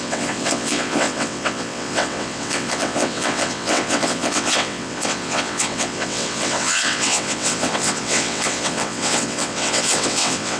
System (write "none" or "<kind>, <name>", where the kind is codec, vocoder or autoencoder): vocoder, WaveNeXt